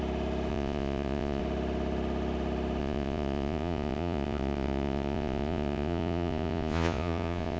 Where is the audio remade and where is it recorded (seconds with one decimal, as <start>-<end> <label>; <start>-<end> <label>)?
0.0-0.5 recorded; 0.5-1.4 remade; 1.4-2.8 recorded; 2.8-7.6 remade